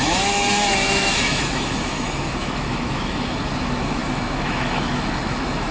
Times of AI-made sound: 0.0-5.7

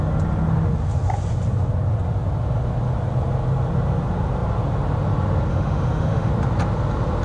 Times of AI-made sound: 5.5-6.3

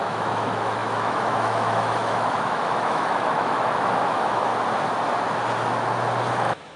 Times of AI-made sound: 0.0-4.5; 6.3-6.8